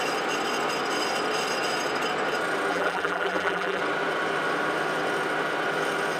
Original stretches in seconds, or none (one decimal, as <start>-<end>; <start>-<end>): 0.0-2.7; 3.8-6.2